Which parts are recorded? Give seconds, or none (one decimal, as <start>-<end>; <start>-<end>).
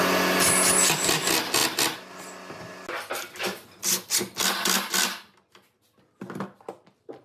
0.0-7.2